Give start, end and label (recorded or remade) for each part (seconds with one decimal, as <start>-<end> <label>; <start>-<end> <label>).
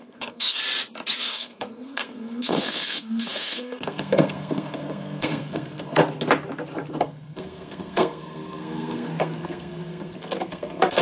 0.0-0.6 remade; 0.6-1.2 recorded; 1.2-6.0 remade; 6.0-6.9 recorded; 6.9-11.0 remade